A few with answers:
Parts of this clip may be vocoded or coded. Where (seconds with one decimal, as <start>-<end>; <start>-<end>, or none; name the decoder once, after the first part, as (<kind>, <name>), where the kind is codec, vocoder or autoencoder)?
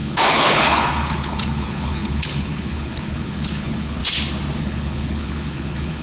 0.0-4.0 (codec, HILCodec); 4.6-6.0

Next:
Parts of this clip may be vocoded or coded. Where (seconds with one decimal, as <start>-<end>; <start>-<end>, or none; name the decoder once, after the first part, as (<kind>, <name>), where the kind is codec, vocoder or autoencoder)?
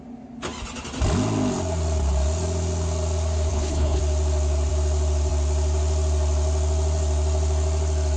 3.5-4.0 (codec, HILCodec)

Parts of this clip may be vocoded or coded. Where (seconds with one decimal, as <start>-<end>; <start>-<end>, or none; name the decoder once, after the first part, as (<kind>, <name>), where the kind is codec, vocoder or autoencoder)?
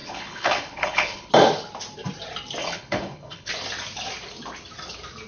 0.0-1.3 (codec, HILCodec); 2.6-3.5